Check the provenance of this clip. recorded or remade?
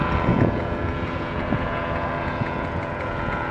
remade